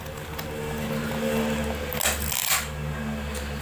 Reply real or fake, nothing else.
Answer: real